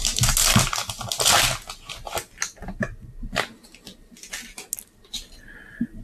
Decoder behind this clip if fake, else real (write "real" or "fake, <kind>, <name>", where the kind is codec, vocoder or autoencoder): real